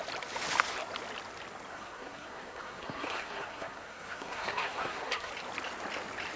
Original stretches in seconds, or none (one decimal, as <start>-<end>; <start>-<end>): 0.0-1.7; 5.3-6.4